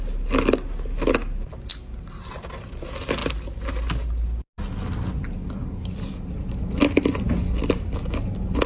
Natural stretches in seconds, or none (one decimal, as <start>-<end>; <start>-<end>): 0.0-8.7